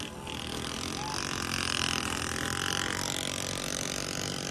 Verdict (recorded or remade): recorded